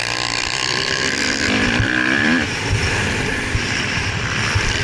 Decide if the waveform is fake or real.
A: fake